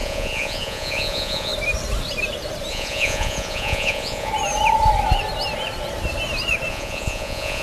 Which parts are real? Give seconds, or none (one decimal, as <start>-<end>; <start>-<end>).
1.5-2.7; 4.3-6.7